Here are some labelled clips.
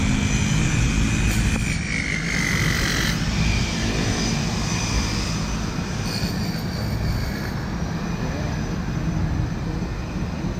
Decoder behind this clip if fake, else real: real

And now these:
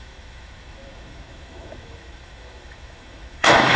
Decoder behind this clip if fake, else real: fake, autoencoder, DAC-VAE